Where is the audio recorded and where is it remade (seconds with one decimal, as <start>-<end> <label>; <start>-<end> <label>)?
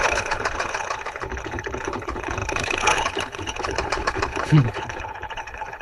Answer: 0.0-5.8 remade